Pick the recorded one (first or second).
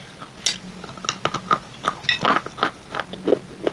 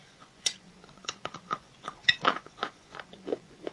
first